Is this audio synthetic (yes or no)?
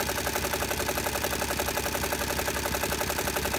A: no